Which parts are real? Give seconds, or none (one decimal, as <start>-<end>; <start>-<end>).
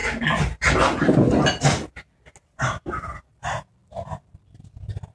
1.0-3.8; 4.3-5.1